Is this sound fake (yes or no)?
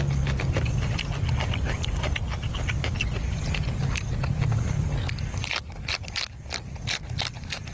no